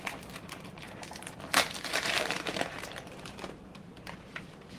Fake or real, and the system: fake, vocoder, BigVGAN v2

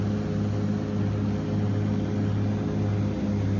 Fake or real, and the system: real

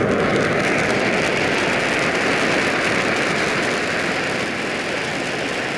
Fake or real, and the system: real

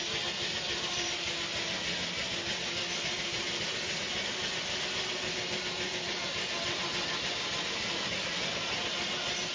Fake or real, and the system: real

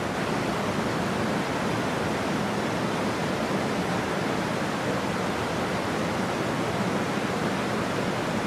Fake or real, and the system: real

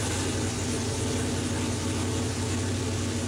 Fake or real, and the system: real